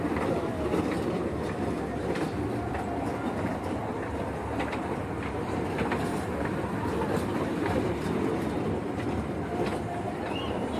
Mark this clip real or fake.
fake